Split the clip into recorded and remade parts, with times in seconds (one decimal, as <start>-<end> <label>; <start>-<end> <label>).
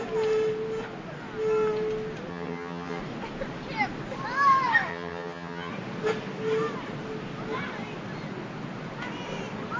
0.0-2.3 recorded; 2.3-3.0 remade; 3.0-4.9 recorded; 4.9-5.7 remade; 5.7-9.8 recorded